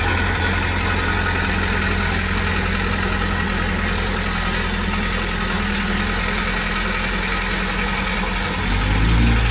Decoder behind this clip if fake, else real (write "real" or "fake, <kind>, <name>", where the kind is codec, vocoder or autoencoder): real